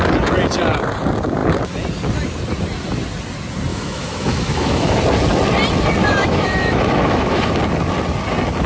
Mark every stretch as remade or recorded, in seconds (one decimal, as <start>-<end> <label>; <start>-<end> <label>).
0.0-3.7 recorded; 3.7-5.0 remade; 5.0-6.0 recorded; 6.0-7.6 remade; 7.6-8.7 recorded